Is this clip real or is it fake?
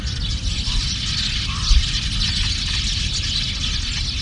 real